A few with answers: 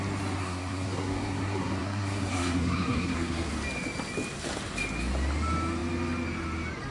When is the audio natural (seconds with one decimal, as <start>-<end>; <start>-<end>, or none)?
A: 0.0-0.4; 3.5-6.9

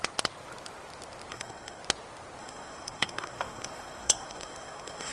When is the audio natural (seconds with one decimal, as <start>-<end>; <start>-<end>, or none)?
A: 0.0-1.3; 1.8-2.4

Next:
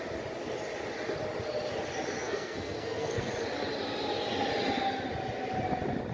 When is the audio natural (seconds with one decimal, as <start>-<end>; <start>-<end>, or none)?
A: 0.0-2.2; 3.3-6.1